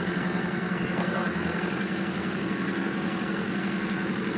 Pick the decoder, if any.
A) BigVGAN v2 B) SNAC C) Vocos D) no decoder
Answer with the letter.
B